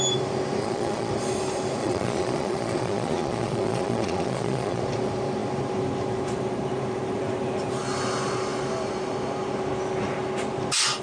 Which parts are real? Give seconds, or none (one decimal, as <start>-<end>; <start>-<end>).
0.0-0.6; 1.1-1.8; 4.8-11.0